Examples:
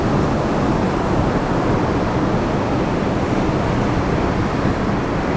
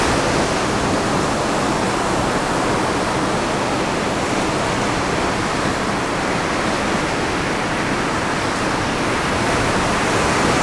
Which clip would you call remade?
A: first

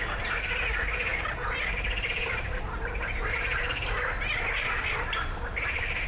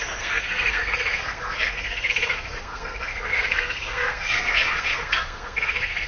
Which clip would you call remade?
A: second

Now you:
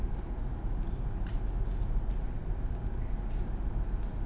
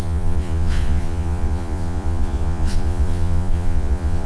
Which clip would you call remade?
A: second